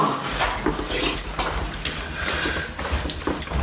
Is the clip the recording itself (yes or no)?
yes